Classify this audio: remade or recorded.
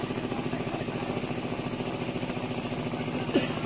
recorded